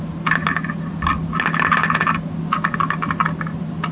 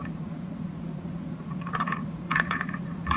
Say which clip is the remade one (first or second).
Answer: second